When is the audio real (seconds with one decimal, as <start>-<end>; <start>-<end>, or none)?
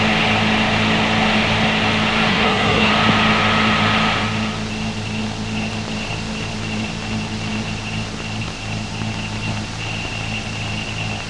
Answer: 0.0-2.3; 2.9-11.3